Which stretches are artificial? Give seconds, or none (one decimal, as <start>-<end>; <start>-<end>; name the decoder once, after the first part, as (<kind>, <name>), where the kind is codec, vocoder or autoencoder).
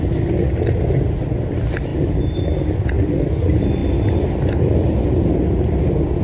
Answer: none